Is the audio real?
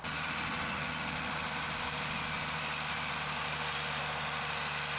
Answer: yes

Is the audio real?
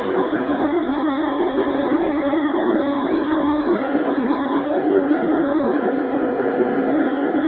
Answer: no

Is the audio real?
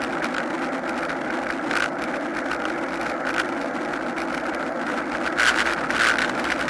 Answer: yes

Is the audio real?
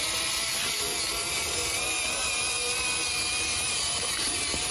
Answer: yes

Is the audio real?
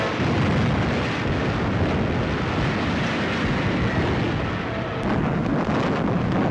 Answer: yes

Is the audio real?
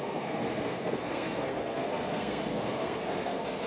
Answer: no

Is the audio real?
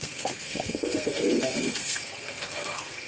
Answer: no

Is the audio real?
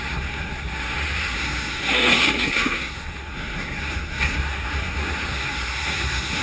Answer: no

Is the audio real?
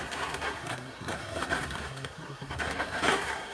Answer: no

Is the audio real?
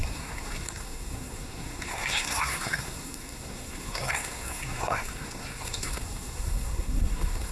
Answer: no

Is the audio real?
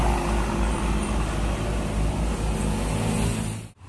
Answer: yes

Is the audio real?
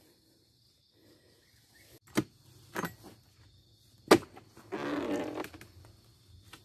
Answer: yes